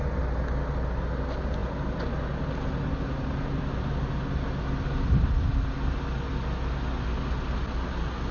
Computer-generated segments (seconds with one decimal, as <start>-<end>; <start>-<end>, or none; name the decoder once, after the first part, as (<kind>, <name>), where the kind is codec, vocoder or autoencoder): none